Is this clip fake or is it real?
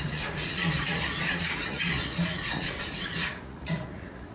fake